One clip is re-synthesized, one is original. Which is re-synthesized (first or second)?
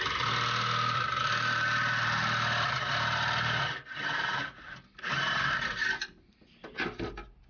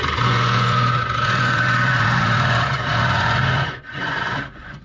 second